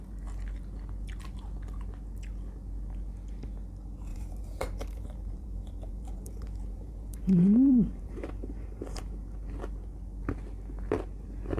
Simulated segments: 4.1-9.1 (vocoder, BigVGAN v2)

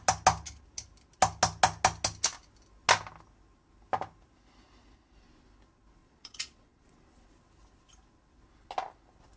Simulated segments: 6.0-7.0 (vocoder, Vocos)

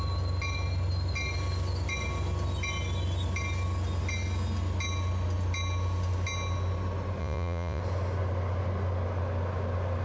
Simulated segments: 7.2-7.8 (vocoder, Vocos)

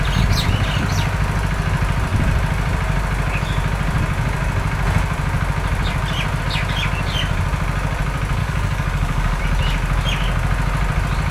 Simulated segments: 8.4-9.4 (codec, DAC)